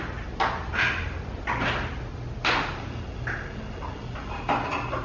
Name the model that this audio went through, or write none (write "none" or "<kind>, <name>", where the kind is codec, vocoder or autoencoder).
none